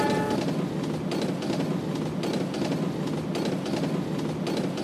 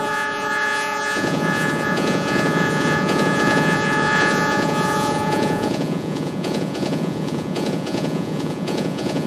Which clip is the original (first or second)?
first